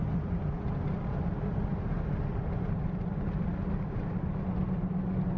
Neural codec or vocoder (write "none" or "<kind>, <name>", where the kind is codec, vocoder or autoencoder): none